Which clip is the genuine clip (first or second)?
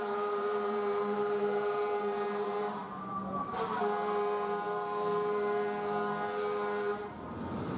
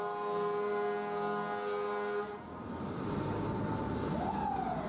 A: second